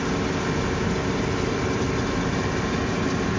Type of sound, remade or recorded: recorded